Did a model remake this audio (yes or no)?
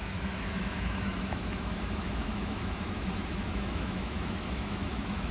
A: yes